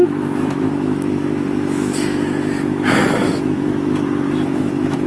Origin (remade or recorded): remade